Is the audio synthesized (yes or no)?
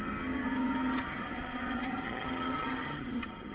yes